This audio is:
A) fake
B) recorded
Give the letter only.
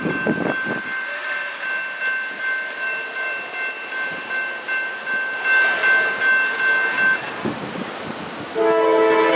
B